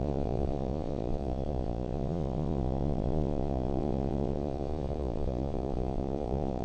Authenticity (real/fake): fake